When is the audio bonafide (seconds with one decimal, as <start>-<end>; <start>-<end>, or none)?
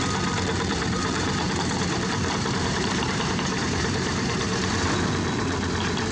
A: 0.0-1.0; 4.7-6.1